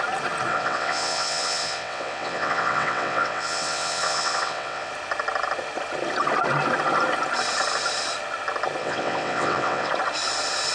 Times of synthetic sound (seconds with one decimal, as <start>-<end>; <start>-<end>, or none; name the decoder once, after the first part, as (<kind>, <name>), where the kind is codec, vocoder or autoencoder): 0.5-4.9 (vocoder, WaveNeXt); 8.8-9.9